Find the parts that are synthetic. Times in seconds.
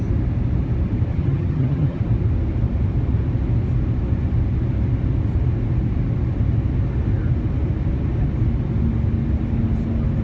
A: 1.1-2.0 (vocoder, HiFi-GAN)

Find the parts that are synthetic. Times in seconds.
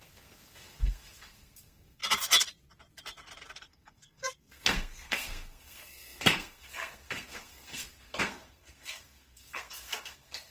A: 0.0-2.0 (codec, SNAC); 3.6-10.5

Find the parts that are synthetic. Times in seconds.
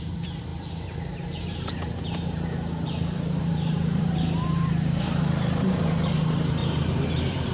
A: 0.0-7.5 (vocoder, BigVGAN v2)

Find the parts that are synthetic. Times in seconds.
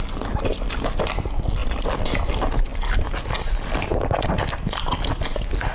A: none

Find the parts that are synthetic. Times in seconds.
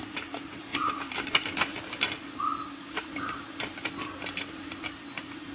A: none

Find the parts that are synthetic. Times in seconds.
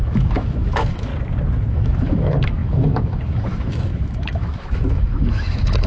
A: 0.0-1.1 (autoencoder, DAC-VAE); 1.7-5.9